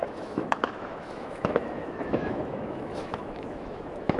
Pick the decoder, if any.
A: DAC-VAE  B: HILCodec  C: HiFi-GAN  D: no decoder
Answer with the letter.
A